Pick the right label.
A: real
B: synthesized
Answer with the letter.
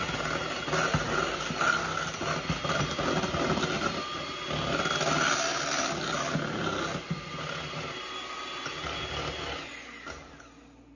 A